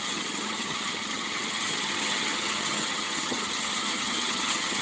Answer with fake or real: fake